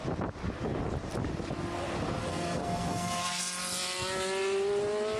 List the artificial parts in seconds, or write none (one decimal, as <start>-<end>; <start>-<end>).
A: 2.3-3.4